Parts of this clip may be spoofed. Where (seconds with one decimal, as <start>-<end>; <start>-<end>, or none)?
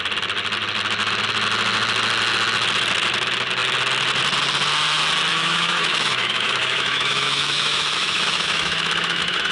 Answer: 5.3-9.5